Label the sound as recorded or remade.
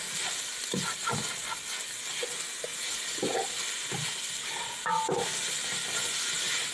recorded